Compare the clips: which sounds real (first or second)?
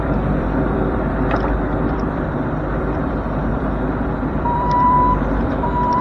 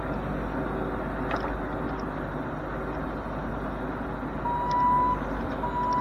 second